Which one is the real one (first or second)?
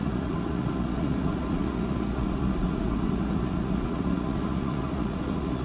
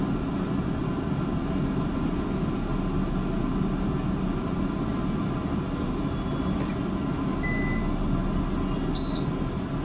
second